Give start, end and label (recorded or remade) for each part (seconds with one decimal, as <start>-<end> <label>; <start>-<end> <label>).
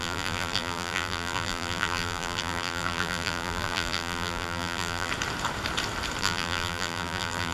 0.0-5.1 remade; 5.1-6.2 recorded; 6.2-7.5 remade